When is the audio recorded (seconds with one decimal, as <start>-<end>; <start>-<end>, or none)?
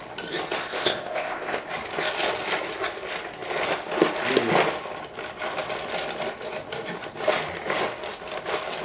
0.0-0.6; 1.7-8.8